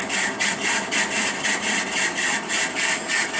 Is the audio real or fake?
real